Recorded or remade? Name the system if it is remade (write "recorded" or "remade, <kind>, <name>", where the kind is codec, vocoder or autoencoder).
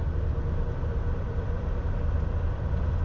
remade, vocoder, BigVGAN v2